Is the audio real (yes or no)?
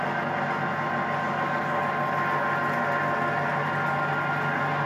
yes